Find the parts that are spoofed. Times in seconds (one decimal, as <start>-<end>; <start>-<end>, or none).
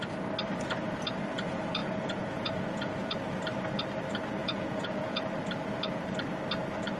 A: 1.8-3.1; 4.4-5.2